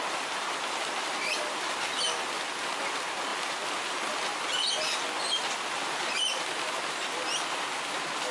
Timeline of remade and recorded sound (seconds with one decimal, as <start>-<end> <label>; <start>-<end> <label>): 0.0-8.3 recorded